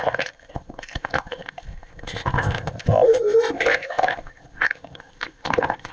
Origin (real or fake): fake